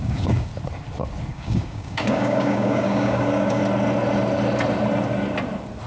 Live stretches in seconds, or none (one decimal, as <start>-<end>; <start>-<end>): 0.5-1.3; 3.6-5.9